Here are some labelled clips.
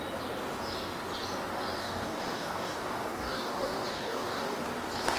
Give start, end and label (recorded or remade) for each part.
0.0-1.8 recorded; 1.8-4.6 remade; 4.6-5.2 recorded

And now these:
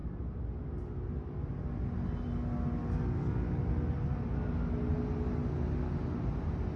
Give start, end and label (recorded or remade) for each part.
0.0-6.8 recorded